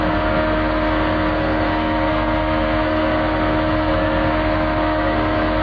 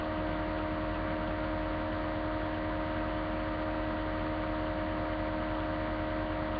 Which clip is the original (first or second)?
second